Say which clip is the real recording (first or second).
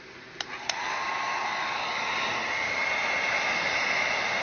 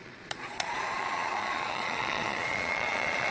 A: first